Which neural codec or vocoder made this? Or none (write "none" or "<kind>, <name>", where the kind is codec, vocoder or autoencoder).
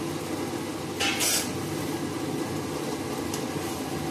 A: none